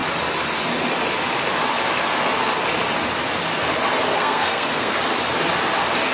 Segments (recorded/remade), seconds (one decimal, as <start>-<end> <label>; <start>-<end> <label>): 0.0-4.1 recorded; 4.1-4.9 remade; 4.9-6.1 recorded